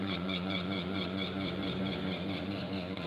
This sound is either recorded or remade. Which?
remade